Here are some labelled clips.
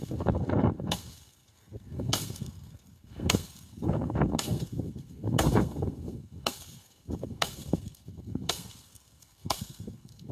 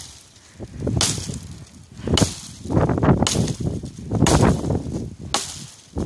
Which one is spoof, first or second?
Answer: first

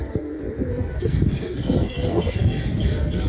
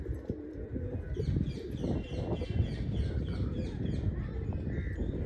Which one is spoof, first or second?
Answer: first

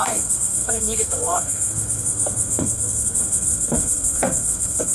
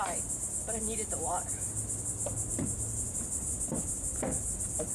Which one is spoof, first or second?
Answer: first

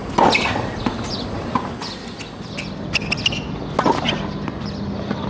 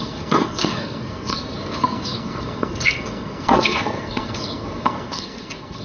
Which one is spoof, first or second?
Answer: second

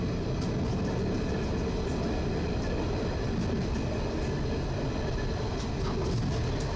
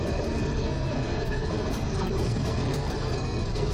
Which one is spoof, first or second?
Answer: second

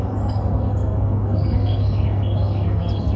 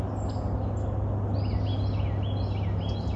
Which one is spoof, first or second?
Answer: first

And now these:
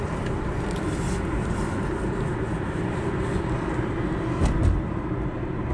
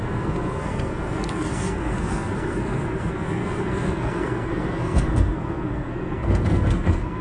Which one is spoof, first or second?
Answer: second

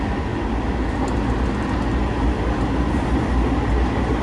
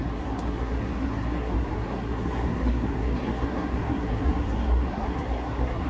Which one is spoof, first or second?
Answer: second